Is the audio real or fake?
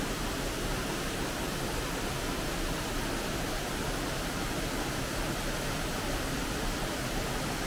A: real